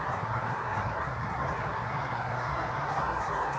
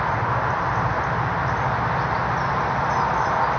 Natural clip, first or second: second